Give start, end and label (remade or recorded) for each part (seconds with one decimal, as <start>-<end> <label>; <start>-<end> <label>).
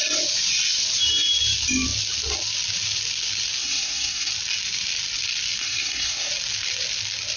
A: 0.0-3.6 recorded; 3.6-4.3 remade; 4.3-5.6 recorded; 5.6-6.3 remade; 6.3-7.4 recorded